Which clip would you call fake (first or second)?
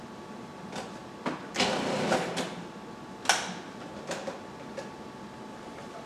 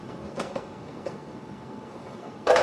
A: second